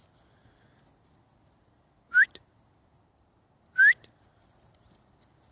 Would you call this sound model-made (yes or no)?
no